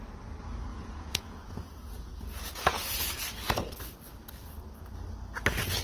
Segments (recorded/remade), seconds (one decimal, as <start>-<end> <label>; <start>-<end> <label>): 0.0-0.7 recorded; 0.7-3.2 remade; 3.2-5.8 recorded